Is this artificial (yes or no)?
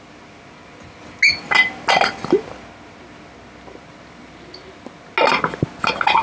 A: no